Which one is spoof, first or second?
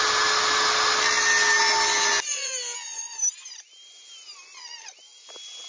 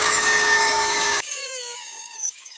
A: second